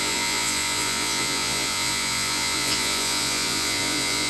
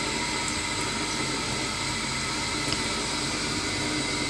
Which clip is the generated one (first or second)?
first